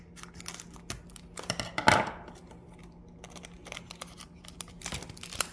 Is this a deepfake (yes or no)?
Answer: no